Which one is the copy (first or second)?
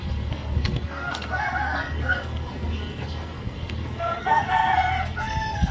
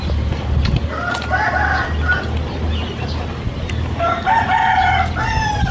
first